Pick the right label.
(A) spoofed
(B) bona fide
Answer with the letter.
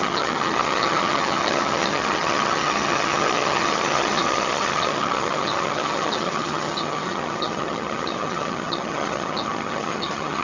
A